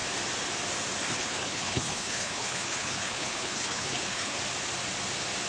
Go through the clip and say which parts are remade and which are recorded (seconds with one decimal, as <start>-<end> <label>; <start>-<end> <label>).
0.0-1.2 recorded; 1.2-4.4 remade; 4.4-5.5 recorded